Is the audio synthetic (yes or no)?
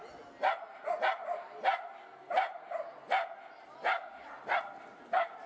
no